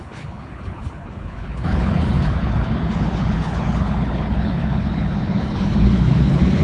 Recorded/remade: remade